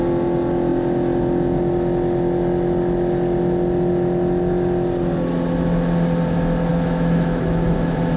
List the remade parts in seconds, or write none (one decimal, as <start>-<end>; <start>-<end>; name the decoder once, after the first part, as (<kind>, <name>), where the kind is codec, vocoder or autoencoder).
6.7-7.7 (autoencoder, DAC-VAE)